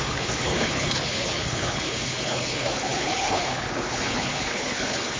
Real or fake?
fake